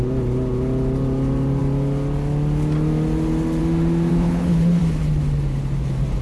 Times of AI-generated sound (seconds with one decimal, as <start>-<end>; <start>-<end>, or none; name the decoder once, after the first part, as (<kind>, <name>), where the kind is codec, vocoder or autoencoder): 4.1-4.8 (codec, HILCodec)